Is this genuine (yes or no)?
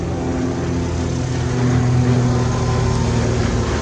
yes